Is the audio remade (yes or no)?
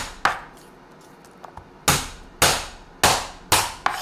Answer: no